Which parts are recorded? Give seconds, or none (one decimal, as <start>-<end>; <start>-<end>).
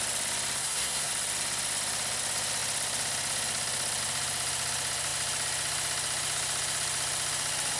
0.0-0.6; 1.1-7.8